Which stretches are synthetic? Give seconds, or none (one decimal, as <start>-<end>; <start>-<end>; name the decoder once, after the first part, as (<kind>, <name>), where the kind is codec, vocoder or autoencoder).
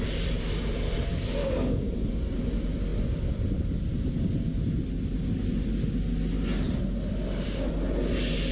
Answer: 1.4-1.9 (codec, DAC)